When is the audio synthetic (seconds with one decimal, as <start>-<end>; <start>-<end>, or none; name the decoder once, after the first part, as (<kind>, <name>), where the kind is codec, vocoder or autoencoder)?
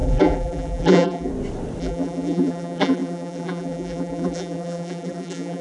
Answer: 0.0-1.3 (vocoder, BigVGAN v2); 1.8-5.6